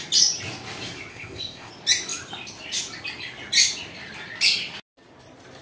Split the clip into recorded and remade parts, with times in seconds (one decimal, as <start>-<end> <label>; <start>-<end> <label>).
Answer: 0.0-1.1 recorded; 1.1-1.7 remade; 1.7-5.6 recorded